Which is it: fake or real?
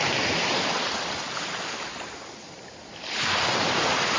real